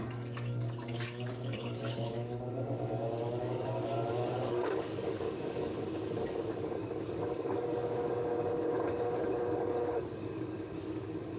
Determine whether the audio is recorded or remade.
remade